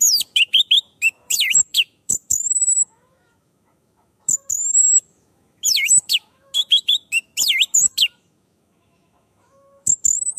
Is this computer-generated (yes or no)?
yes